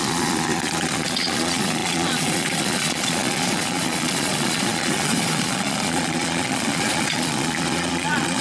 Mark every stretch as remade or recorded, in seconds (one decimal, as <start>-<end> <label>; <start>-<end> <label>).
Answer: 0.0-8.4 remade